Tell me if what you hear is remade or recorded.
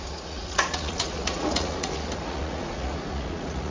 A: remade